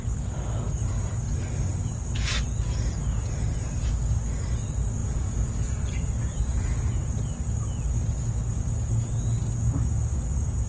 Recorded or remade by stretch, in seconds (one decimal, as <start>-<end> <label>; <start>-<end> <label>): 0.0-5.0 recorded; 5.0-7.1 remade; 7.1-10.7 recorded